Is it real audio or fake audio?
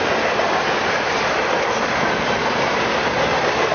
real